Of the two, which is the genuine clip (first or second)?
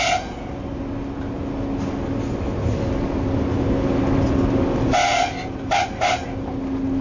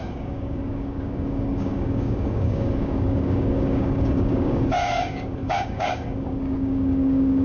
first